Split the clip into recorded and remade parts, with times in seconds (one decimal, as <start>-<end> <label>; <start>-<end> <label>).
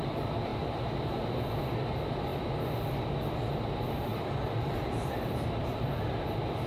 0.0-0.5 recorded; 0.5-1.5 remade; 1.5-4.1 recorded; 4.1-6.0 remade; 6.0-6.7 recorded